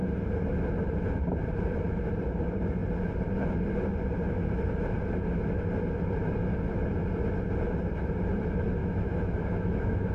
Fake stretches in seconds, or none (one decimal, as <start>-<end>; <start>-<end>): 8.8-10.1